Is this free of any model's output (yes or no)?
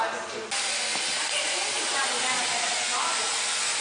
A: yes